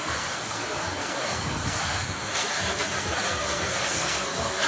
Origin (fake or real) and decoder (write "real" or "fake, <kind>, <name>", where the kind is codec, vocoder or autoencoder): fake, codec, SNAC